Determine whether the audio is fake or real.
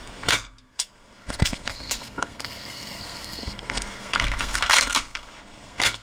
fake